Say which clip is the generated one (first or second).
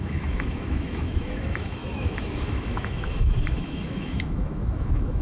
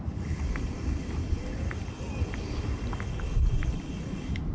first